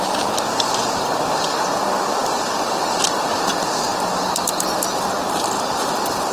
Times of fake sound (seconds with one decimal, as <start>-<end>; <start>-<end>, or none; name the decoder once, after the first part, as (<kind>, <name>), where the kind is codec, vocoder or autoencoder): 2.2-3.5 (vocoder, BigVGAN v2)